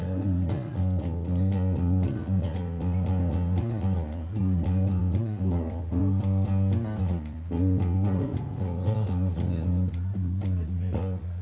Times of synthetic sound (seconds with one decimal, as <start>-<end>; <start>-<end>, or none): 0.0-6.0; 7.0-11.4